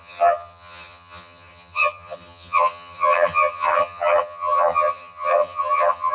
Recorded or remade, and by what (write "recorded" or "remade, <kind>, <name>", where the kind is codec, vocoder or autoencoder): remade, vocoder, HiFi-GAN